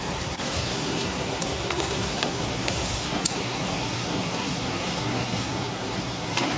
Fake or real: fake